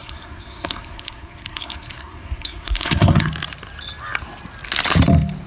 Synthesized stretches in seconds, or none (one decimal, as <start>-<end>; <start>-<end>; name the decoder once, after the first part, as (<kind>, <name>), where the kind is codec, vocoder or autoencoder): 0.0-3.3 (codec, SNAC)